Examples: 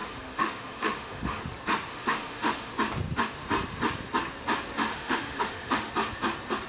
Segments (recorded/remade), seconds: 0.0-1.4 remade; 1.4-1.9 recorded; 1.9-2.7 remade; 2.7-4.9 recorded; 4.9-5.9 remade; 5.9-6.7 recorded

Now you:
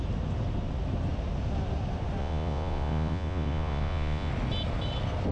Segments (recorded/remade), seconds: 0.0-2.2 recorded; 2.2-4.3 remade; 4.3-5.3 recorded

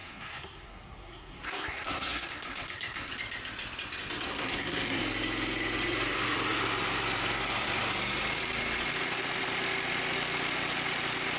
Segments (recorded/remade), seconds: 0.0-3.1 remade; 3.1-4.3 recorded; 4.3-5.0 remade; 5.0-11.4 recorded